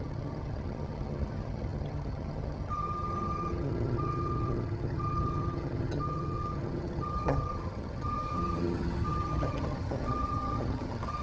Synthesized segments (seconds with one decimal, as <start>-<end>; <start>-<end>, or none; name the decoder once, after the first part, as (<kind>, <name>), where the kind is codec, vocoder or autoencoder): 0.0-11.2 (vocoder, HiFi-GAN)